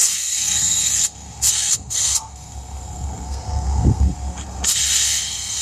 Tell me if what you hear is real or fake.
fake